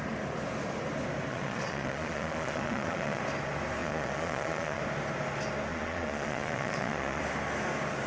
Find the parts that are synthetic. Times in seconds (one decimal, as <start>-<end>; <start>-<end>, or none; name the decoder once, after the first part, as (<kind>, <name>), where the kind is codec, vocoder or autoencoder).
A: 1.3-3.2 (vocoder, Vocos); 3.8-4.8; 5.7-7.2